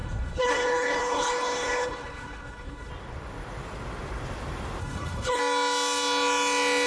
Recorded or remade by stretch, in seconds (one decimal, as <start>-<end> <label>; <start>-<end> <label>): 0.0-2.9 remade; 2.9-4.8 recorded; 4.8-5.4 remade; 5.4-6.9 recorded